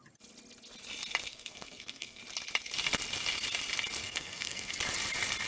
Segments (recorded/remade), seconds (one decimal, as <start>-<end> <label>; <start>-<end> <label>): 0.0-1.3 recorded; 1.3-2.2 remade; 2.2-4.0 recorded; 4.0-4.7 remade; 4.7-5.5 recorded